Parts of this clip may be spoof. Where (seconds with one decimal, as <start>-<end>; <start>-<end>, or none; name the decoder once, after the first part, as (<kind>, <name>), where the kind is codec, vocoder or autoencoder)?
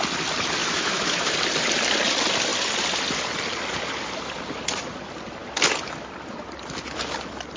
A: 0.6-1.3 (autoencoder, DAC-VAE)